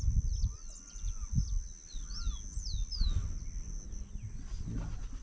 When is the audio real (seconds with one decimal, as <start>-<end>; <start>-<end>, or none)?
0.0-5.2